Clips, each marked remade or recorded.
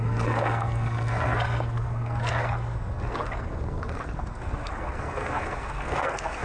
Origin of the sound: remade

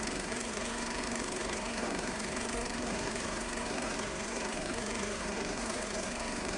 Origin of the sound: remade